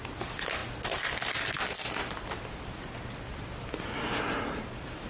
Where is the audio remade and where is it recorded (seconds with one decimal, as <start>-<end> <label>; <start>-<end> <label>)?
0.0-5.1 recorded

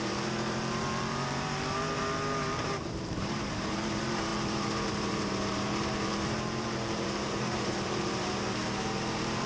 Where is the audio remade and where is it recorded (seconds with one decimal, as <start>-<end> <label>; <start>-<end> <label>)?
0.0-9.5 remade

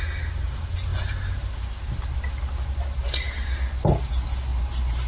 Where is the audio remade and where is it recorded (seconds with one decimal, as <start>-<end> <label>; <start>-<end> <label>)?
0.0-4.5 recorded; 4.5-5.1 remade

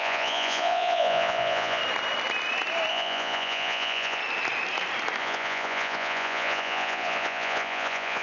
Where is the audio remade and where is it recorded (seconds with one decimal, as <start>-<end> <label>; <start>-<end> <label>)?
0.0-1.8 remade; 1.8-2.9 recorded; 2.9-4.2 remade; 4.2-5.2 recorded; 5.2-8.2 remade